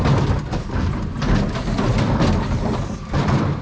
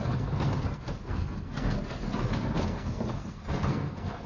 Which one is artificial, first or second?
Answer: second